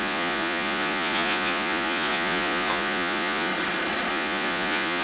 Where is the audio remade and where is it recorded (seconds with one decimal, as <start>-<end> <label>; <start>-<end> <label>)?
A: 0.0-3.5 remade; 3.5-4.1 recorded; 4.1-5.0 remade